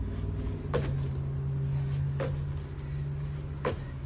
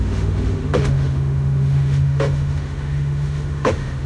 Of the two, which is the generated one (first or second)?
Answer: second